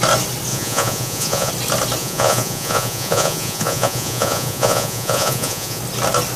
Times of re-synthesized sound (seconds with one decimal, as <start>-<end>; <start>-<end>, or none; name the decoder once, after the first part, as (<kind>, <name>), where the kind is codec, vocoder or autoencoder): 0.5-1.5 (vocoder, Vocos); 2.0-5.8